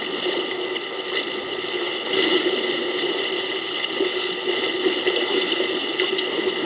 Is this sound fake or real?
real